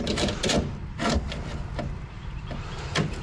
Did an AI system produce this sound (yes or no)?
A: yes